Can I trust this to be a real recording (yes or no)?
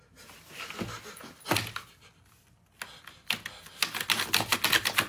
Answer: yes